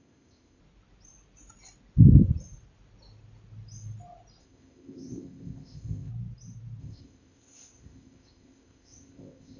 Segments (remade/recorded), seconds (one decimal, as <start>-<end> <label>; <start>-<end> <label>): 0.0-0.6 remade; 0.6-4.4 recorded; 4.4-6.1 remade; 6.1-6.8 recorded; 6.8-9.6 remade